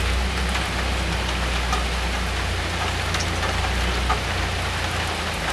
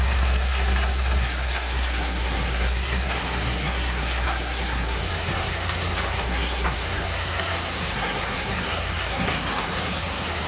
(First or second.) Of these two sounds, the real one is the first